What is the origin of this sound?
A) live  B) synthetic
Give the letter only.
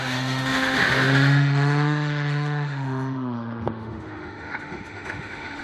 B